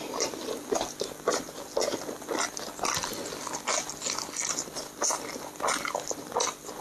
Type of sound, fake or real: real